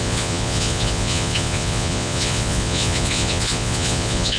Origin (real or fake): fake